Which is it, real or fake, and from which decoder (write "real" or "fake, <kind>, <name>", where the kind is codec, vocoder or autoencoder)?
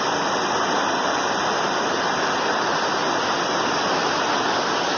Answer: fake, vocoder, BigVGAN v2